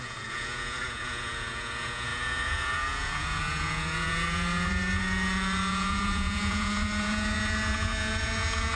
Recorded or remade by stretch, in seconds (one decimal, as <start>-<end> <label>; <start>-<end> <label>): 0.0-8.8 remade